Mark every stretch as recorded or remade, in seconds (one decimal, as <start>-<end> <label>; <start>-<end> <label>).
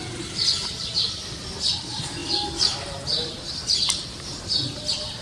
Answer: 0.0-5.2 recorded